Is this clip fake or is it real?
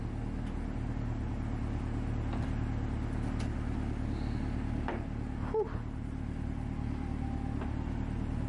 real